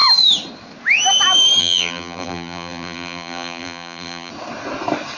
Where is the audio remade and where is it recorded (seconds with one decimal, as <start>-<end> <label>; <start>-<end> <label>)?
0.0-1.6 recorded; 1.6-4.3 remade; 4.3-5.2 recorded